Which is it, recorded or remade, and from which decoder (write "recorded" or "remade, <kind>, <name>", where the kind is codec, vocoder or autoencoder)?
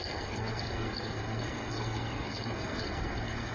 remade, codec, SNAC